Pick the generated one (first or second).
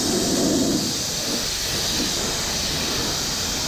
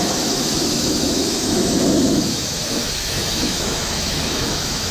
second